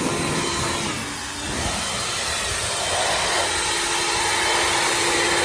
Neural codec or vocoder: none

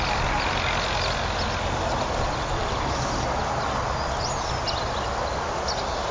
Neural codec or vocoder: none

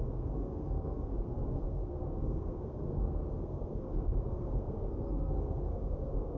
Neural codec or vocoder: codec, SNAC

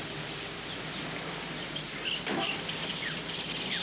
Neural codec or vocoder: none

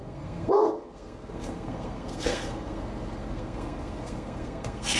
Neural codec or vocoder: codec, SNAC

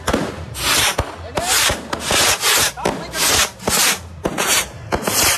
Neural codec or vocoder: none